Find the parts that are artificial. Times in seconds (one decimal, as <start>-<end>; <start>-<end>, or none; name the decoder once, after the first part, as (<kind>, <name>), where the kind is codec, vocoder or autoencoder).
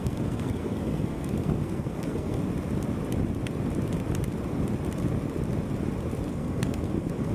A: 0.0-2.4 (codec, SNAC); 6.3-7.3